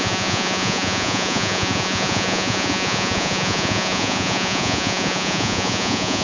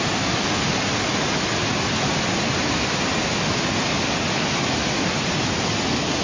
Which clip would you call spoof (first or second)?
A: first